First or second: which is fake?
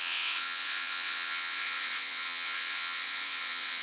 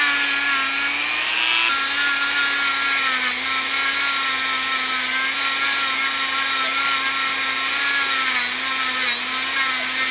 first